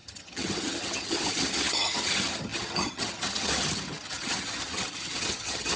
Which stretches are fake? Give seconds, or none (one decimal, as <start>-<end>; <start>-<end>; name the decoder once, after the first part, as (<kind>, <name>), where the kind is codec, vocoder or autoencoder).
0.0-5.8 (vocoder, HiFi-GAN)